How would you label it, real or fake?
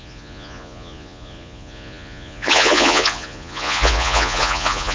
fake